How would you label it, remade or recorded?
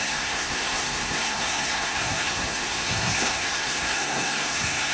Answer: remade